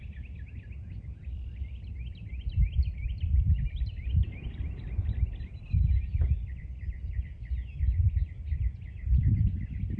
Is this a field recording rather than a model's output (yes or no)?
no